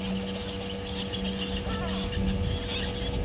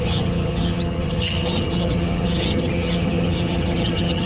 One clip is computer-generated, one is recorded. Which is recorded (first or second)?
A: first